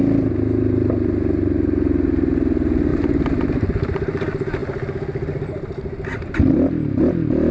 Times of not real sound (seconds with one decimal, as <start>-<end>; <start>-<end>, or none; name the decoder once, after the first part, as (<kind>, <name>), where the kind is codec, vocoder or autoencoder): none